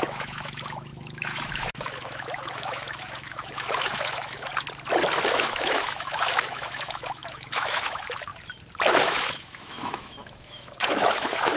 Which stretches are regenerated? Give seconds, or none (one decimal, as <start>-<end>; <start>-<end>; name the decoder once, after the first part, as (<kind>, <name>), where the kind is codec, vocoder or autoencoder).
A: 0.0-4.5 (autoencoder, DAC-VAE); 5.3-8.3; 8.9-11.6